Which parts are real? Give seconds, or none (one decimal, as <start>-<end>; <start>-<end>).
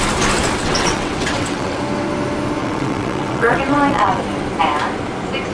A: 0.0-0.6; 1.8-2.6; 4.2-5.5